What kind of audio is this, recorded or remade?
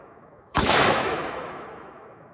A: remade